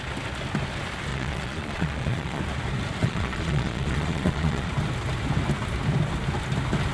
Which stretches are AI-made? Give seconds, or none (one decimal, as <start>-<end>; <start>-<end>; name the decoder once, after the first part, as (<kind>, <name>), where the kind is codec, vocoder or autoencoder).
1.1-2.4 (vocoder, Vocos); 3.0-4.7